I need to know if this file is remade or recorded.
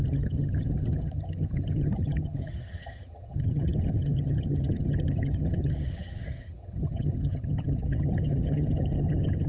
remade